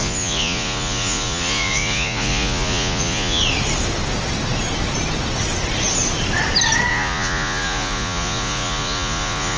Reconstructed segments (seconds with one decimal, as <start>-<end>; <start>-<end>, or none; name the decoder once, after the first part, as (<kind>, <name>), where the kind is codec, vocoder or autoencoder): 0.0-3.4 (vocoder, Vocos); 6.9-9.6